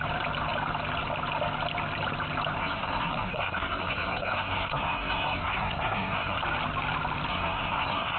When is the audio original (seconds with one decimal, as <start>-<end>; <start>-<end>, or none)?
0.0-2.6; 6.4-7.3